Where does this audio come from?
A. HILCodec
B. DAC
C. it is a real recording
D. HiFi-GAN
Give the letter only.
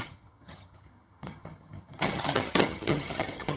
D